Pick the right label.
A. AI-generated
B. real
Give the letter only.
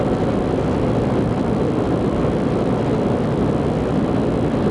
B